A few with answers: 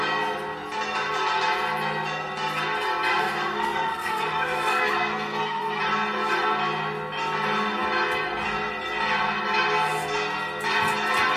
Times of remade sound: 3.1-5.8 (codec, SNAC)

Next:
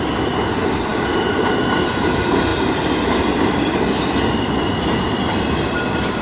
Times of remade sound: none

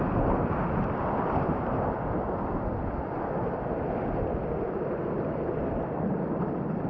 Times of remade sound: none